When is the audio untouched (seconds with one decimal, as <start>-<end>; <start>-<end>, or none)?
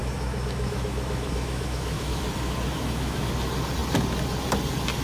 2.2-2.7; 3.3-5.0